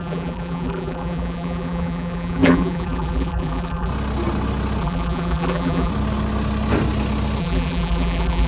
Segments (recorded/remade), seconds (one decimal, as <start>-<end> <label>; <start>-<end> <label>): 0.0-3.9 remade; 3.9-4.8 recorded; 4.8-5.9 remade; 5.9-7.4 recorded; 7.4-8.5 remade